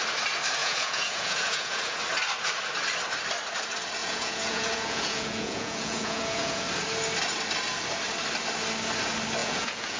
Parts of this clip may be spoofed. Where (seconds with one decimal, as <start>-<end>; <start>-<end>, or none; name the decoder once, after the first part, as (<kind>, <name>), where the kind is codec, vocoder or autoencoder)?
0.6-2.0 (vocoder, Vocos); 4.0-6.6; 9.4-10.0